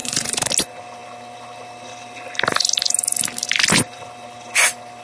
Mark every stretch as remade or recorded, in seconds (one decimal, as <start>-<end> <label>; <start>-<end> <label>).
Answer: 0.0-0.5 remade; 0.5-5.0 recorded